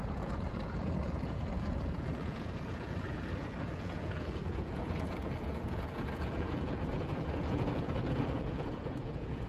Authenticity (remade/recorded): remade